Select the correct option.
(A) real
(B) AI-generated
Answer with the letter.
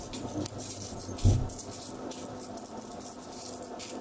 A